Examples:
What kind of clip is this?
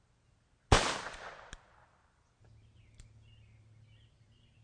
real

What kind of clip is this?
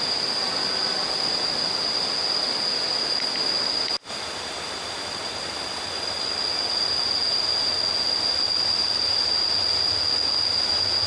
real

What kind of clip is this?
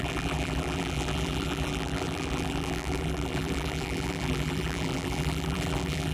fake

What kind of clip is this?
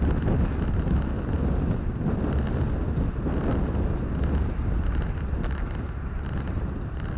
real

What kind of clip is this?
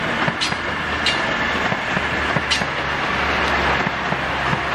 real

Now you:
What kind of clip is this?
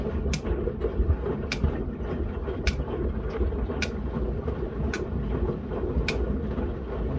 real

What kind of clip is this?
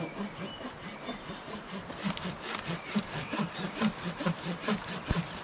real